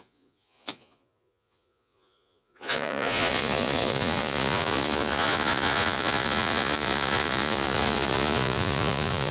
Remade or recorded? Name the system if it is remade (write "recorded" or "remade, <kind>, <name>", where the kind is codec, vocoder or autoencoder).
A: remade, vocoder, Vocos